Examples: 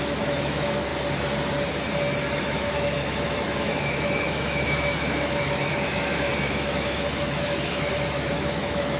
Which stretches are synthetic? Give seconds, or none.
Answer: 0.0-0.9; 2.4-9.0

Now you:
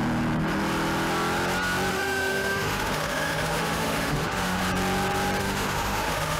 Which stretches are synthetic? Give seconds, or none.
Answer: 1.9-4.6; 5.4-6.4